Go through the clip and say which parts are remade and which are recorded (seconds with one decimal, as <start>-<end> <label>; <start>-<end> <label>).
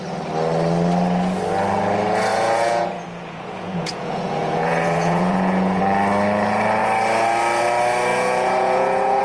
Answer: 0.0-2.3 recorded; 2.3-5.8 remade; 5.8-8.1 recorded; 8.1-9.2 remade